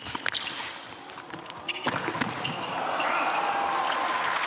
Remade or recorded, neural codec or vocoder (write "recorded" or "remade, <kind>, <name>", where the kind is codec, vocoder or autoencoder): recorded